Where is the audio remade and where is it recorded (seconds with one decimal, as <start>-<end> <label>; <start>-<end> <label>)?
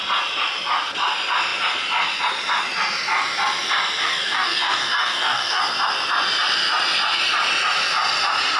0.0-4.0 recorded; 4.0-5.6 remade; 5.6-8.6 recorded